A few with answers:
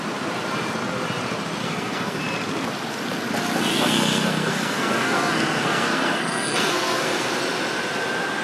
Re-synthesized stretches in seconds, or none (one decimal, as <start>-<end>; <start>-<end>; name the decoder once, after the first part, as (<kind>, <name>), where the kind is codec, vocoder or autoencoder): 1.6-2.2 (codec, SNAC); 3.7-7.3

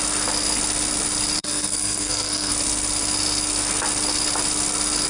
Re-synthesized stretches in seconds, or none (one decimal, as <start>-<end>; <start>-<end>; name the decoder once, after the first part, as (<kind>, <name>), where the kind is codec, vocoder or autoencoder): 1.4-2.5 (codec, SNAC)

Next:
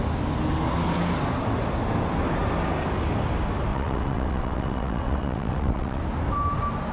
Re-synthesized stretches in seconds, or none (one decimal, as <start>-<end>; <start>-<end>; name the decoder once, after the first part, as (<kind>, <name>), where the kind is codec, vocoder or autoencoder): 3.7-6.0 (vocoder, WaveNeXt)

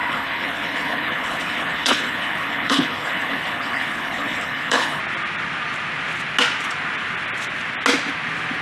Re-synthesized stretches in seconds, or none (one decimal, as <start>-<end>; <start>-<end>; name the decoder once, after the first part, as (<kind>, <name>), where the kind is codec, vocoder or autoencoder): 0.0-5.0 (codec, HILCodec)